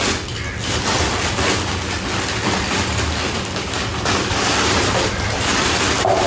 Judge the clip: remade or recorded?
recorded